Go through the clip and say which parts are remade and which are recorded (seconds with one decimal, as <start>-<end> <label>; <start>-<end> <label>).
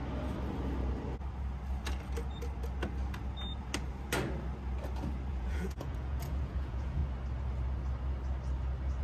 0.0-5.3 recorded; 5.3-7.0 remade; 7.0-9.0 recorded